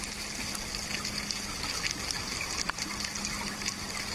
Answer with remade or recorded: recorded